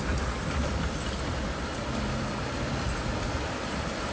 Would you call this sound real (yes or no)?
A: yes